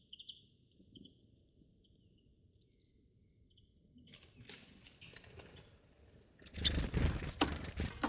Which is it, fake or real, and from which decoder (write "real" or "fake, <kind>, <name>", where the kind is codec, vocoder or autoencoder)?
real